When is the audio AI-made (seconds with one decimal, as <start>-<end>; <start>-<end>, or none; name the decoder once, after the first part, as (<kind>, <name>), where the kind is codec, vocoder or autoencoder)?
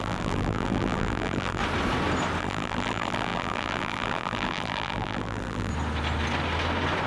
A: 0.0-1.6 (vocoder, BigVGAN v2); 2.4-5.7